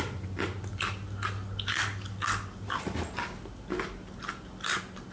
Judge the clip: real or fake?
real